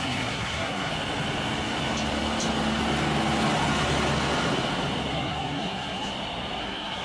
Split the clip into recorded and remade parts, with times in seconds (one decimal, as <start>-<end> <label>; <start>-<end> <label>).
0.0-0.9 remade; 0.9-5.1 recorded; 5.1-6.1 remade; 6.1-6.6 recorded; 6.6-7.0 remade